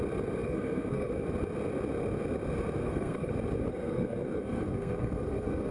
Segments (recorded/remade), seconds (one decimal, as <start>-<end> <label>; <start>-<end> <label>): 0.0-0.4 recorded; 0.4-1.1 remade; 1.1-2.8 recorded; 2.8-3.3 remade; 3.3-3.7 recorded; 3.7-5.7 remade